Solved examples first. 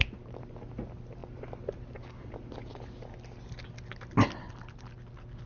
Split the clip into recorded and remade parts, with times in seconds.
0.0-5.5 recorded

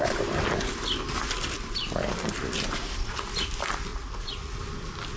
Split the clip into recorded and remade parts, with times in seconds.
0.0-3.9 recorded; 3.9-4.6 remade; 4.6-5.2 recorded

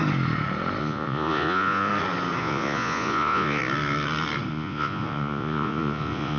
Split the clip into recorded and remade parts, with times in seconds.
0.0-0.8 recorded; 0.8-1.9 remade; 1.9-2.4 recorded; 2.4-3.6 remade; 3.6-4.5 recorded; 4.5-6.4 remade

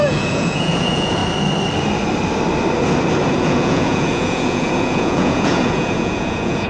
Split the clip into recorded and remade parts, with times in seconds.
0.0-1.2 remade; 1.2-3.3 recorded; 3.3-6.7 remade